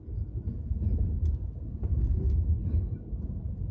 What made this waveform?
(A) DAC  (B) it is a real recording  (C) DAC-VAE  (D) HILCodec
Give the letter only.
B